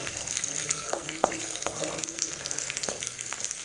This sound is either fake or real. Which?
fake